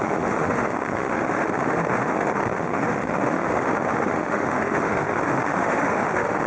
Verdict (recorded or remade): remade